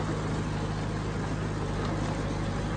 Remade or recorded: recorded